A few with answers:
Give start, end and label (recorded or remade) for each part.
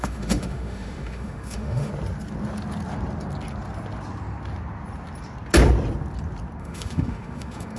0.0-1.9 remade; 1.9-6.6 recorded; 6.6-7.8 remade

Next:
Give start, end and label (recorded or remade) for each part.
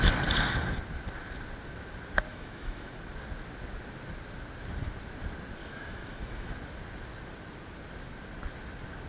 0.0-2.3 recorded; 2.3-2.9 remade; 2.9-5.6 recorded; 5.6-6.5 remade; 6.5-9.1 recorded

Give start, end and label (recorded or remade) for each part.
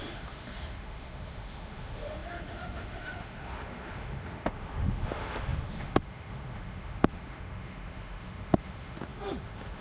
0.0-9.8 remade